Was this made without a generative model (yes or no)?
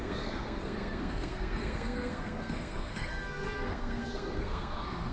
no